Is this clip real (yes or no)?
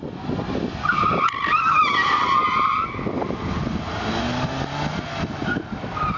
yes